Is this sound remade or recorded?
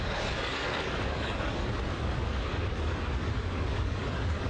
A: remade